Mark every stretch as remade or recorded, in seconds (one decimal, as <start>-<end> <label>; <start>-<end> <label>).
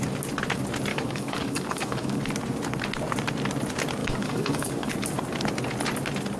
0.0-0.9 recorded; 0.9-2.2 remade; 2.2-4.0 recorded; 4.0-4.9 remade; 4.9-6.4 recorded